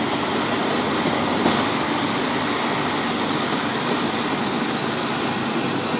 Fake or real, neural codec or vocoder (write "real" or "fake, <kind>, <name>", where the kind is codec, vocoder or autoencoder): real